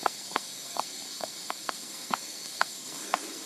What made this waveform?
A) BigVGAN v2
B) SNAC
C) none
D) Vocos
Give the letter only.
B